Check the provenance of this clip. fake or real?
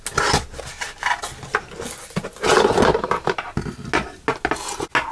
real